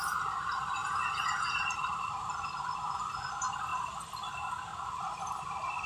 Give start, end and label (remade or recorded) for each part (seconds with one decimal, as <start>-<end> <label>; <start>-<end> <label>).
0.0-0.8 recorded; 0.8-1.6 remade; 1.6-5.9 recorded